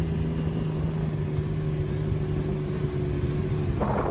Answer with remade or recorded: recorded